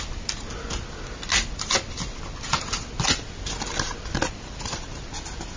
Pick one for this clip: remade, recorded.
recorded